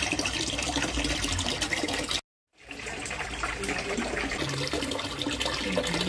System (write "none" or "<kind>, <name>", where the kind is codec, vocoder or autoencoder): none